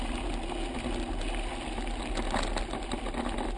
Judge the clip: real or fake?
real